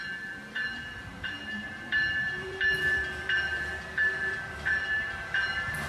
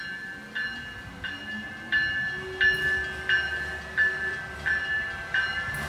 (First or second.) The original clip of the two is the second